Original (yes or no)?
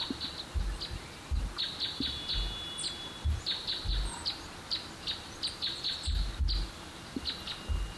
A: yes